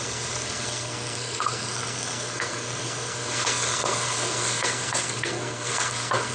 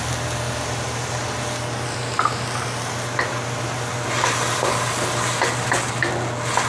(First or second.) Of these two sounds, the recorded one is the second